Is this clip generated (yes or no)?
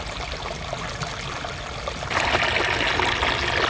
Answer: no